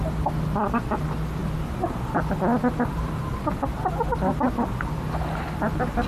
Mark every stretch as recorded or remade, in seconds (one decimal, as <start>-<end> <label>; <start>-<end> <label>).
0.0-6.1 recorded